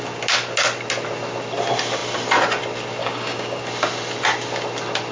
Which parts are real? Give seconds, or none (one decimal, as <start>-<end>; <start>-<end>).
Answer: 0.0-3.0; 3.6-5.1